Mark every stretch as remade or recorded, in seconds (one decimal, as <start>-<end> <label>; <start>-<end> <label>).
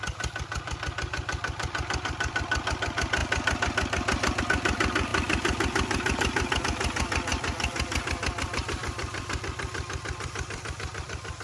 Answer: 0.0-3.2 remade; 3.2-4.4 recorded; 4.4-11.4 remade